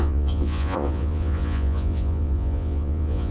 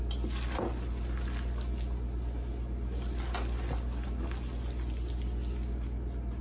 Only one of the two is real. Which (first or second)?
second